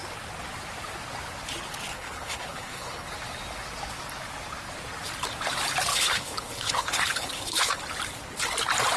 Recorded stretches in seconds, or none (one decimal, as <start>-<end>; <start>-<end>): 0.0-1.9; 3.1-5.9; 7.8-9.0